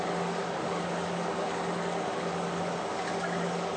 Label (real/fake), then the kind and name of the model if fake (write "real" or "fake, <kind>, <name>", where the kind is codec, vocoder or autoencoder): fake, codec, DAC